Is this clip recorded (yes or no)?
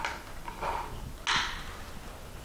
yes